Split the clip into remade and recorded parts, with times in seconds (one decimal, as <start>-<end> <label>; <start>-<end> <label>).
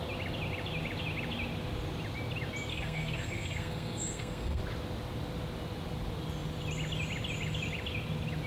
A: 0.0-2.7 recorded; 2.7-4.6 remade; 4.6-8.5 recorded